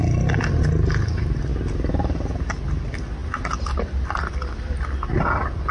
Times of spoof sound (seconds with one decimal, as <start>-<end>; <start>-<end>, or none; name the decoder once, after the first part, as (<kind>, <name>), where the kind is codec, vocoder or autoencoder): none